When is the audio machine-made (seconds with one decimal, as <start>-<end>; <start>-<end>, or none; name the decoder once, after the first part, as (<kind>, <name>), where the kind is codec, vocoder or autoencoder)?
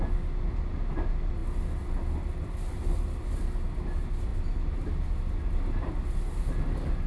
none